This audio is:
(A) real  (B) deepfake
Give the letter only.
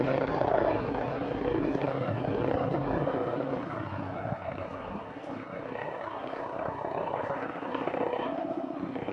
B